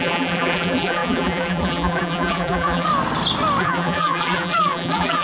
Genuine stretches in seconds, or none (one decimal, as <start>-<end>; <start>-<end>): 2.9-3.6